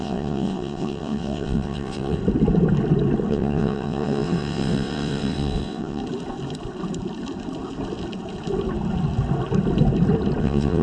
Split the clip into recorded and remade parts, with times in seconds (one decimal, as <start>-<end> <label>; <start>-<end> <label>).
0.0-2.2 remade; 2.2-3.3 recorded; 3.3-6.0 remade; 6.0-10.4 recorded; 10.4-10.8 remade